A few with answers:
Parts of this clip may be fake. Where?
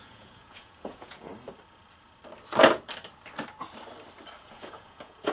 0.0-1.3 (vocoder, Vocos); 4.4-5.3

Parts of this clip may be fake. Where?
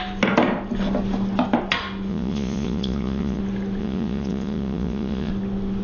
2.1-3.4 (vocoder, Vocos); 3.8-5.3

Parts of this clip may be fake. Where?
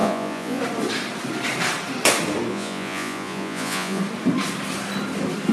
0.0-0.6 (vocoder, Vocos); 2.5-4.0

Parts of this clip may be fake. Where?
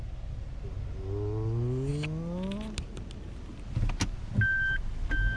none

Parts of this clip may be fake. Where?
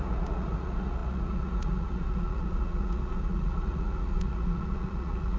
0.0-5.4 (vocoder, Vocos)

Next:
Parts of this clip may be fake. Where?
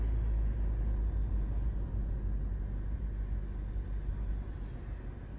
none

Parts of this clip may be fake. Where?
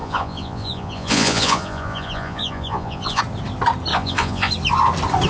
0.0-3.2 (vocoder, Vocos); 3.9-4.5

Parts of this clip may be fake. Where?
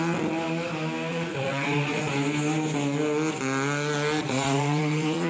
1.1-2.1 (vocoder, Vocos); 4.2-5.3